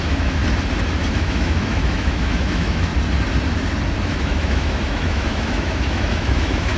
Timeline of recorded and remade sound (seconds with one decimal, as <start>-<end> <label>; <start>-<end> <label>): 0.0-0.4 remade; 0.4-1.1 recorded; 1.1-2.9 remade; 2.9-4.0 recorded; 4.0-6.8 remade